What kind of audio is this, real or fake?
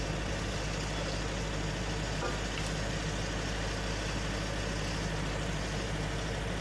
real